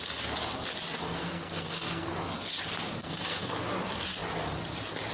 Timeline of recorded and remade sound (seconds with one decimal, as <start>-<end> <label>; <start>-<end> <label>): 0.0-1.0 recorded; 1.0-2.1 remade; 2.1-3.0 recorded; 3.0-3.6 remade; 3.6-5.1 recorded